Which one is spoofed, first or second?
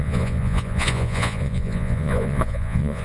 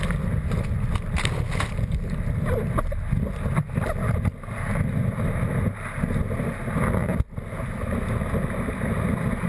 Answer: first